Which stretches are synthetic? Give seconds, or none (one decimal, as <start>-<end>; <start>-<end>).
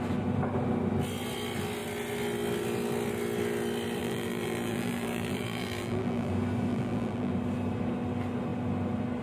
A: 4.0-6.3; 6.7-7.3